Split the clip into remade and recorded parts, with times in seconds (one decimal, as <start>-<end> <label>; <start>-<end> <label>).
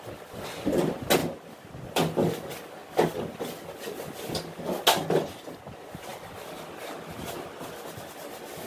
0.0-8.7 recorded